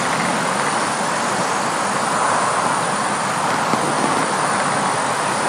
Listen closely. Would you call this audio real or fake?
real